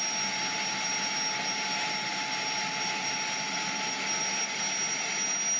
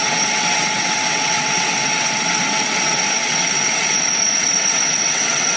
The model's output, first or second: second